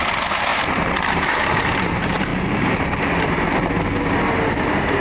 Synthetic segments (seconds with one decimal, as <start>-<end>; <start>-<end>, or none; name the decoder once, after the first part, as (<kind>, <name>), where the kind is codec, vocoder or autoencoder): 0.0-5.0 (vocoder, BigVGAN v2)